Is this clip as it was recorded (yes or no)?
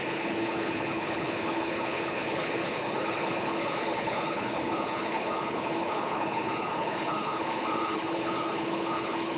no